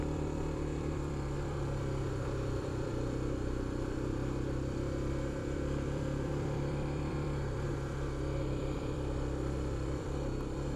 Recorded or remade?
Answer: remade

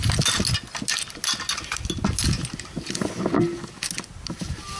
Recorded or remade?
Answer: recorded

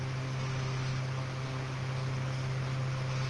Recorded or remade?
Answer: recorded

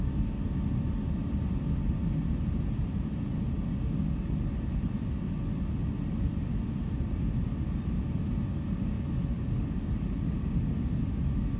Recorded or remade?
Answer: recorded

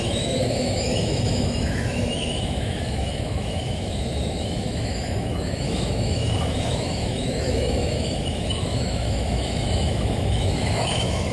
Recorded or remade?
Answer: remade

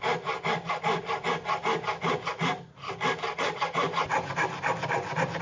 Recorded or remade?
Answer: recorded